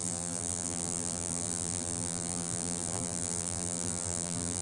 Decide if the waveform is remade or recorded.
remade